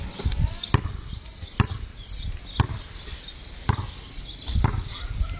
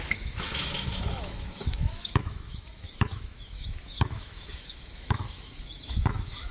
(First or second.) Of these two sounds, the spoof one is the second